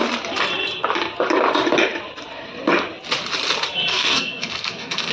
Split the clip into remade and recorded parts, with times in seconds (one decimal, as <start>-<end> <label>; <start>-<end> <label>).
0.0-3.9 recorded; 3.9-5.1 remade